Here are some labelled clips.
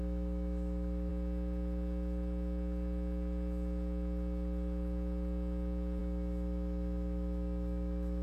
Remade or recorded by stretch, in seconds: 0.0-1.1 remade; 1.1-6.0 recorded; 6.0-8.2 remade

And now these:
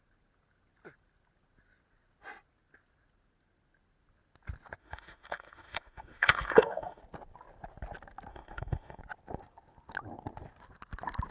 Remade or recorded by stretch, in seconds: 0.0-4.8 recorded; 4.8-7.0 remade; 7.0-8.3 recorded; 8.3-9.0 remade; 9.0-11.3 recorded

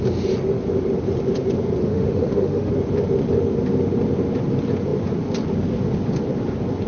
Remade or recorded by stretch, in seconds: 0.0-1.8 recorded; 1.8-2.7 remade; 2.7-6.9 recorded

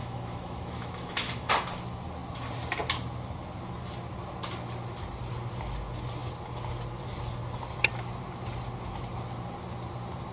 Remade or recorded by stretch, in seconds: 0.0-1.5 remade; 1.5-10.3 recorded

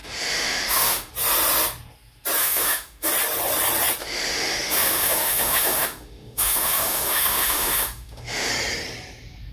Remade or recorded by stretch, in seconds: 0.0-1.1 remade; 1.1-2.4 recorded; 2.4-3.1 remade; 3.1-4.0 recorded; 4.0-8.5 remade; 8.5-9.5 recorded

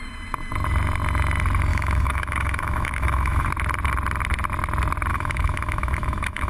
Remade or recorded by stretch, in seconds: 0.0-1.7 recorded; 1.7-3.5 remade; 3.5-5.1 recorded; 5.1-6.5 remade